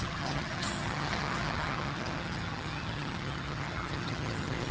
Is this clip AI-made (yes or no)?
yes